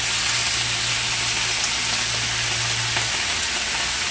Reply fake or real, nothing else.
real